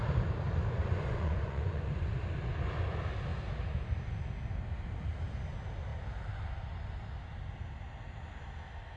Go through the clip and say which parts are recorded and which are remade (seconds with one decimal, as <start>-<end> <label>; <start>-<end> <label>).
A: 0.0-0.8 recorded; 0.8-2.1 remade; 2.1-9.0 recorded